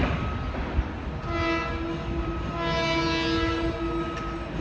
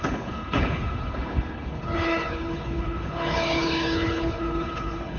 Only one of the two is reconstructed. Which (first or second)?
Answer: second